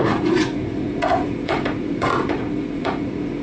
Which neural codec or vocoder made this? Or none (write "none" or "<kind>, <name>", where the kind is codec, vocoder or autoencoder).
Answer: vocoder, Vocos